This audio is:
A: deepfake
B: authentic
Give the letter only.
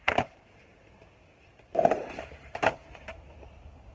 A